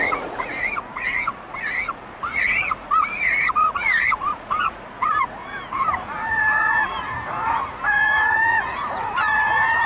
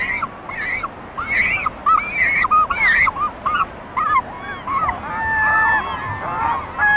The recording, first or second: second